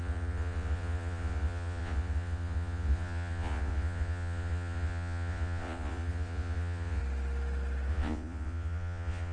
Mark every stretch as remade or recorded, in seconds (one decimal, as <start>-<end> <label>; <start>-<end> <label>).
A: 0.0-7.0 remade; 7.0-7.9 recorded; 7.9-9.3 remade